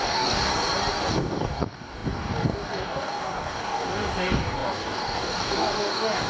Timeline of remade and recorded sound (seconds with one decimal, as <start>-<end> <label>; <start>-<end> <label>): 0.0-0.5 remade; 0.5-1.1 recorded; 1.1-6.3 remade